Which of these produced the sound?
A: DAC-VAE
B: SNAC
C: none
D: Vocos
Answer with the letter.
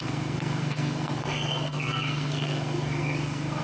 B